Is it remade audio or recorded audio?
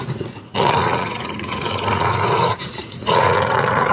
remade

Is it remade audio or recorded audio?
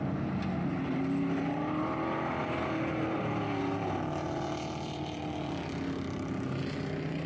recorded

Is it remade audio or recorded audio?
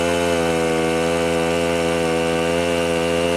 recorded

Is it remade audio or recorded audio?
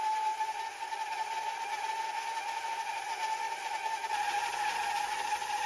recorded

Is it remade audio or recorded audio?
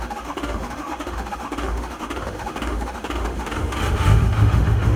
remade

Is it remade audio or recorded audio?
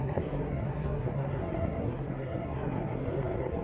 remade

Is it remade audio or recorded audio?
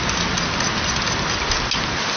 recorded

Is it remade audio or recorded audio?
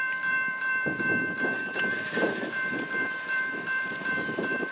remade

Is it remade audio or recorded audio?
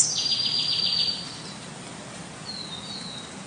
recorded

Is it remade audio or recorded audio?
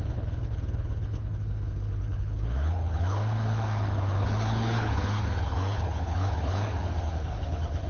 remade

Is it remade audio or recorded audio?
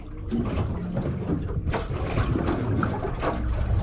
recorded